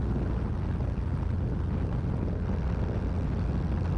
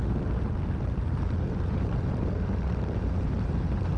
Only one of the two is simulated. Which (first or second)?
second